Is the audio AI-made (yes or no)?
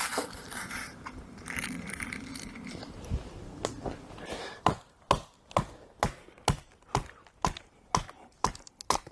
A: no